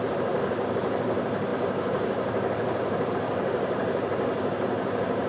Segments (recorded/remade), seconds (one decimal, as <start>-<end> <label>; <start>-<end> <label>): 0.0-5.3 remade